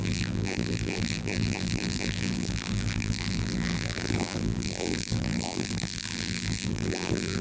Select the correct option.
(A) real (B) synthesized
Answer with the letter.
B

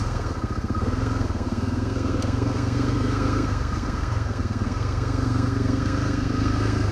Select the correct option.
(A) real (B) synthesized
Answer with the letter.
B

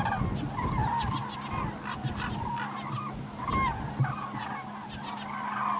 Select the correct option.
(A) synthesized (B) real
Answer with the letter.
B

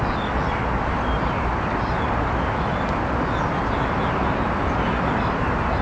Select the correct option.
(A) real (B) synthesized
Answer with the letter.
A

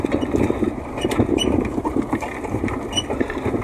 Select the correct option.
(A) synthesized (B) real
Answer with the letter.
B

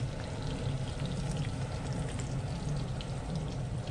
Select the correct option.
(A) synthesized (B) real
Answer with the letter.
B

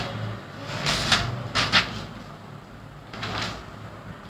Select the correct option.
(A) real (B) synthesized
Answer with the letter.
A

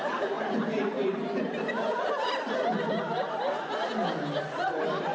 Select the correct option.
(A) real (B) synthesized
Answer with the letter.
A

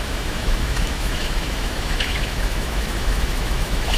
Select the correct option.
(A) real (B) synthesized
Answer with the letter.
B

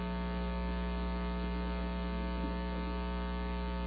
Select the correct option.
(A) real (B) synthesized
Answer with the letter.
A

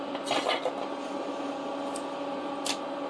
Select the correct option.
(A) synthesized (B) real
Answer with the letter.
B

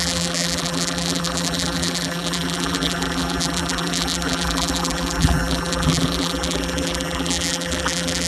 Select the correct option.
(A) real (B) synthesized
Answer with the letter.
B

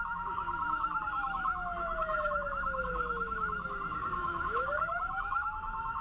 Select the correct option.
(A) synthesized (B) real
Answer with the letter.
A